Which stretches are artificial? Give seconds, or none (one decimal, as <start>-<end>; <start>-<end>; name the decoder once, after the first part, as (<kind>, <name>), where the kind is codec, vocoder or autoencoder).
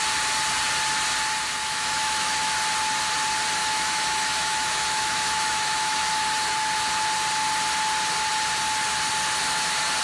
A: 1.6-2.5 (autoencoder, DAC-VAE); 3.6-6.0